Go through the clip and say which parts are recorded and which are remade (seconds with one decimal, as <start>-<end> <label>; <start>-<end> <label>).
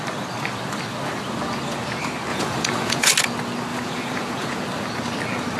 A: 0.0-2.3 recorded; 2.3-3.1 remade; 3.1-3.7 recorded; 3.7-4.6 remade; 4.6-5.6 recorded